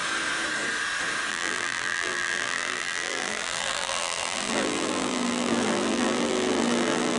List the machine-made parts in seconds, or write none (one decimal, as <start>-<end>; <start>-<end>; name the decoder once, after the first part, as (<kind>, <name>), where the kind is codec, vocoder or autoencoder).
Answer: 1.3-7.2 (vocoder, BigVGAN v2)